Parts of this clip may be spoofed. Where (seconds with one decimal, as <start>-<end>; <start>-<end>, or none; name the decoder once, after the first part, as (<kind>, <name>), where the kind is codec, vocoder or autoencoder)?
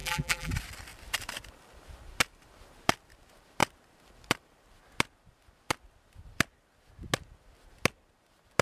0.0-0.5 (vocoder, BigVGAN v2)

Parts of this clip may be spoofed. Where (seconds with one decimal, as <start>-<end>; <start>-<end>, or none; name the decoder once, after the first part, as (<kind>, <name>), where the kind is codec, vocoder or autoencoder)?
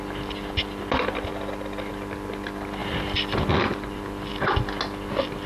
none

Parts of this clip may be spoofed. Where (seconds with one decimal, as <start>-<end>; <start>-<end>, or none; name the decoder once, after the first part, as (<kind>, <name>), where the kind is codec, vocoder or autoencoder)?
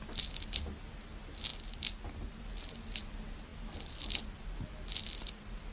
none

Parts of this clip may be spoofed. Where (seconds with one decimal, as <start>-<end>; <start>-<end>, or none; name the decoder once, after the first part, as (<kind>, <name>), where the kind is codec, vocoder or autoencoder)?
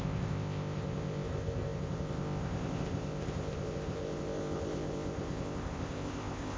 0.0-6.6 (codec, ZipCodec)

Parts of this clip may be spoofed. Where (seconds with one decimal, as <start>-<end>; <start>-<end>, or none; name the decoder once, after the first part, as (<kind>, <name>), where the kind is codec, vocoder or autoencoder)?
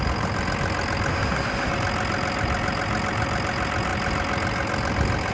1.1-1.7 (autoencoder, DAC-VAE)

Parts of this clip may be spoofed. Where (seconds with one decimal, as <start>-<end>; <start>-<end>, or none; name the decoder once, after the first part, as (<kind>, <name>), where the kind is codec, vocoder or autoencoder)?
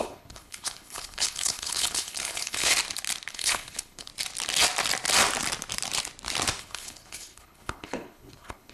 0.0-2.7 (codec, HILCodec); 3.3-4.1; 6.6-8.7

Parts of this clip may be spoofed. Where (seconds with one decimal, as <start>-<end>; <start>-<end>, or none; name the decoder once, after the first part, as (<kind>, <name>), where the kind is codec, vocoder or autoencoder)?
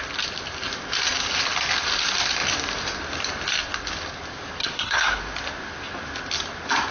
4.6-5.2 (codec, SNAC)